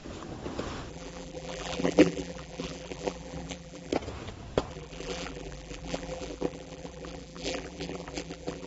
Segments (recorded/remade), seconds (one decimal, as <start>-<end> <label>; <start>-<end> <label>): 0.0-0.9 recorded; 0.9-3.9 remade; 3.9-4.7 recorded; 4.7-8.7 remade